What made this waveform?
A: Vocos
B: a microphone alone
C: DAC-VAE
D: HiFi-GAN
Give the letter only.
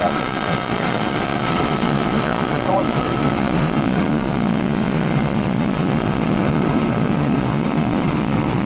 A